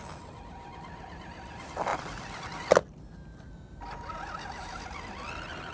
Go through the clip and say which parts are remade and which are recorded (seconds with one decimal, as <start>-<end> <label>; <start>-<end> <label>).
0.0-5.7 recorded